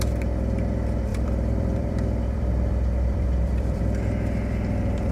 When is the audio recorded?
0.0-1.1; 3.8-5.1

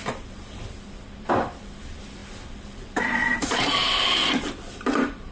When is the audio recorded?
none

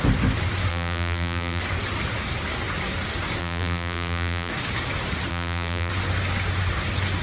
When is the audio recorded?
0.0-0.7; 1.6-3.4; 4.5-5.3; 5.9-7.2

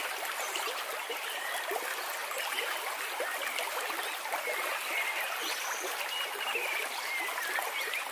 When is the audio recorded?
0.0-8.1

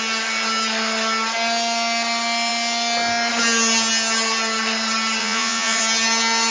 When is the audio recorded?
0.0-5.2; 5.8-6.5

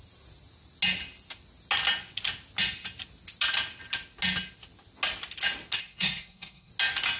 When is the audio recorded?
0.0-5.8; 6.7-7.2

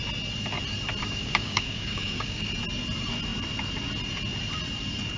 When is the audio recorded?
0.0-1.0; 2.5-5.2